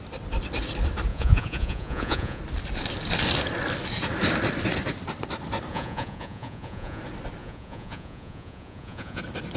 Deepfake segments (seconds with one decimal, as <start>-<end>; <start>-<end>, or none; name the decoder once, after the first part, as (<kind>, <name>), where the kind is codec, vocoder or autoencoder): 1.1-2.4 (vocoder, Vocos); 5.7-7.0; 7.4-9.2